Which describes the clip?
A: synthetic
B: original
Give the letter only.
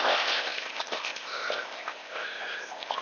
A